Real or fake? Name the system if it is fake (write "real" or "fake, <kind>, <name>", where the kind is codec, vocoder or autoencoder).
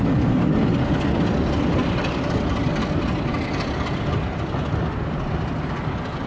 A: real